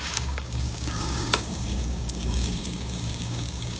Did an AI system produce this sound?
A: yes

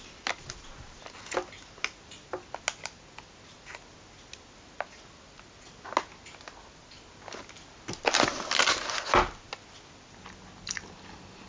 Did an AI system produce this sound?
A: no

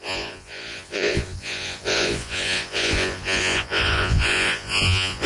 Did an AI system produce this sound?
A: yes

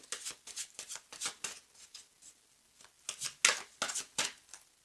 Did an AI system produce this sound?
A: no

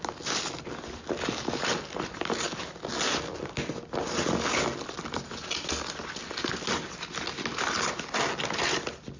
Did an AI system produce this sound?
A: no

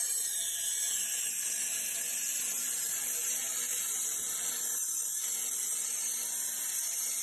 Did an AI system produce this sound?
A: yes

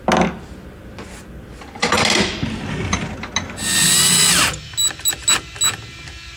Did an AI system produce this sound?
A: no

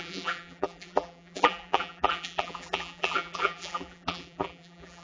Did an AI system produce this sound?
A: yes